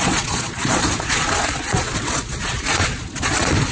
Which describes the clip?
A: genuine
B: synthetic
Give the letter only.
B